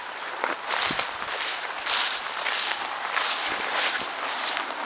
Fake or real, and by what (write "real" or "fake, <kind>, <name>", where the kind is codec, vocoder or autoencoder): real